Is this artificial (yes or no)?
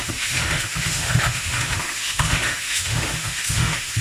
yes